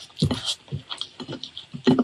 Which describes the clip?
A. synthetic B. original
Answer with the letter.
B